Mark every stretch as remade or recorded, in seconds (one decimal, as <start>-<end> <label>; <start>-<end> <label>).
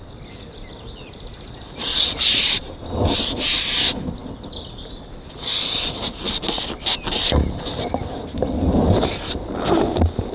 0.0-1.9 recorded; 1.9-2.7 remade; 2.7-10.3 recorded